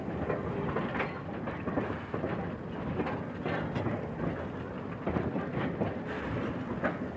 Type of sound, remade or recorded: recorded